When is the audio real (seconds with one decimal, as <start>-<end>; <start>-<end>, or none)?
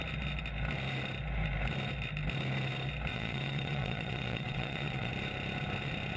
0.0-3.1; 5.1-6.2